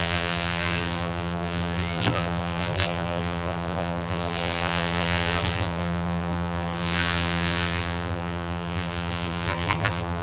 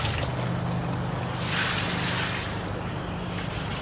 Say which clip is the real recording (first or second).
second